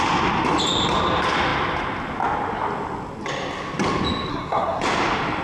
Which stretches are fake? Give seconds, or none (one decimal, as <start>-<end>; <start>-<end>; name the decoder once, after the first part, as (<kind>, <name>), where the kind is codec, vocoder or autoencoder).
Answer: 4.3-4.8 (codec, SNAC)

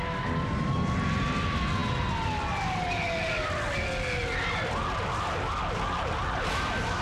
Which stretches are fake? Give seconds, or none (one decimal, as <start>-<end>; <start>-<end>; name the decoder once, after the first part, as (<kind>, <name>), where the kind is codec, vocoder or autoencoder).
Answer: none

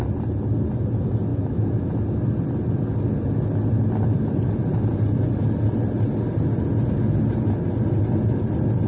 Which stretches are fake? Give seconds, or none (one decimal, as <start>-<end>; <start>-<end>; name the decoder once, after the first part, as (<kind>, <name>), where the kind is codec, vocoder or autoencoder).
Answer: 1.3-1.9 (autoencoder, DAC-VAE)

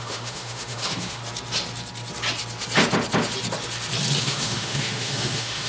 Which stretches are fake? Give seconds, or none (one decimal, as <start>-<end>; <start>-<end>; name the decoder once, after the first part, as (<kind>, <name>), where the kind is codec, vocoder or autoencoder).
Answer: 0.0-1.2 (autoencoder, DAC-VAE); 4.2-5.7

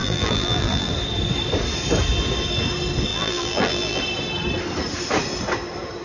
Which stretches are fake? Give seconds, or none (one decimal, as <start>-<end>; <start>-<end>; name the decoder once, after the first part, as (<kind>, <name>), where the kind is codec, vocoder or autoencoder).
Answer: 0.0-0.9 (vocoder, BigVGAN v2); 3.1-4.0

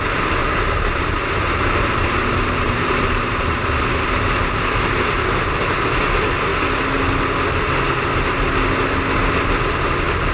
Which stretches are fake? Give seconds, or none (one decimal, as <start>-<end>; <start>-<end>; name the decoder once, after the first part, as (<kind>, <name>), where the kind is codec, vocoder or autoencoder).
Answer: 0.4-5.2 (vocoder, BigVGAN v2)